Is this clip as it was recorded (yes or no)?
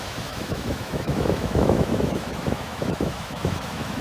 no